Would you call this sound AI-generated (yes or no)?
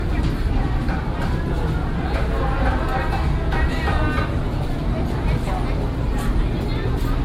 no